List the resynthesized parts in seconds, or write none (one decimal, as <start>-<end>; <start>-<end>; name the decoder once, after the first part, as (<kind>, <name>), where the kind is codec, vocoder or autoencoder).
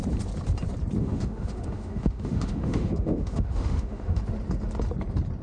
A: 1.0-4.2 (autoencoder, DAC-VAE)